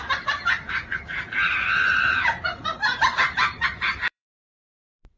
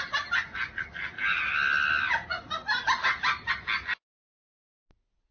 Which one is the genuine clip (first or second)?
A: second